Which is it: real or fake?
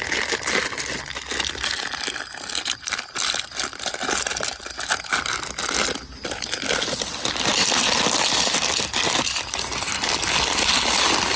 real